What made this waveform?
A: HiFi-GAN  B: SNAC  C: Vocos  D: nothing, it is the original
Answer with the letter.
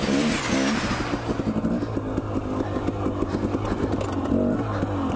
D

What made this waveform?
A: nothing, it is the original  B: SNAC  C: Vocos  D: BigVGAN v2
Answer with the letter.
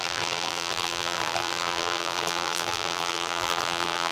D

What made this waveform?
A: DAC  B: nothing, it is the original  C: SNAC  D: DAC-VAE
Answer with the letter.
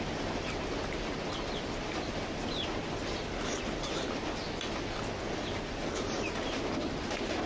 B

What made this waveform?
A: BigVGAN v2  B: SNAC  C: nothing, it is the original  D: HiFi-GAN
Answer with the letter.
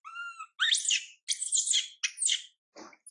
C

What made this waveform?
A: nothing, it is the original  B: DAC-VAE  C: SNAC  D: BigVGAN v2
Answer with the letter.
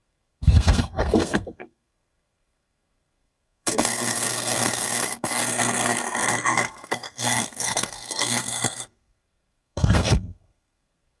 C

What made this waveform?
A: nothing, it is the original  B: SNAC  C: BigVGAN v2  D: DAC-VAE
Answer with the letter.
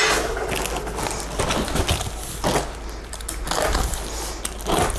A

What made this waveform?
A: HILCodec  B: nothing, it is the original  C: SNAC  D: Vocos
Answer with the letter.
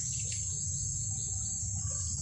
B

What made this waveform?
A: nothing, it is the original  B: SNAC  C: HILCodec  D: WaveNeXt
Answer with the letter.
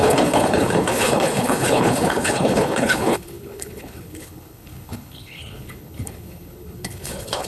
C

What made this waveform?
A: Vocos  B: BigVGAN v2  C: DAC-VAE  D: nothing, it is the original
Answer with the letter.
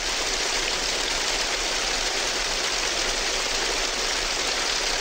D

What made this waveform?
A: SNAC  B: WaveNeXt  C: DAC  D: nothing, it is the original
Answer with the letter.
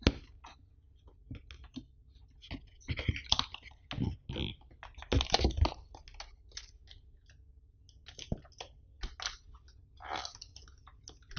D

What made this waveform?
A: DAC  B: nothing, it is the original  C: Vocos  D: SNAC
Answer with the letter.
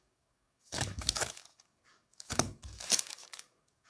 A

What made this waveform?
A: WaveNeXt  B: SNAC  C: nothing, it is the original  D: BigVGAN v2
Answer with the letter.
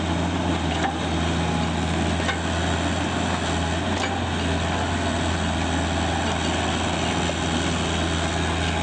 C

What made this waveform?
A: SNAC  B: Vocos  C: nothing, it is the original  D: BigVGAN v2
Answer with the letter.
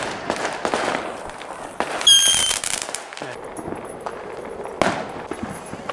C